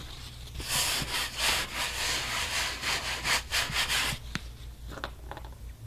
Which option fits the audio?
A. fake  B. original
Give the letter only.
B